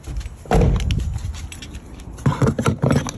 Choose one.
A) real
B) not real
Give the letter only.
A